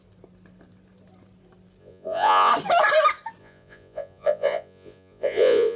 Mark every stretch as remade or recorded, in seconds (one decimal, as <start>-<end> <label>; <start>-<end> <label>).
0.0-1.8 recorded; 1.8-2.5 remade; 2.5-3.4 recorded; 3.4-5.8 remade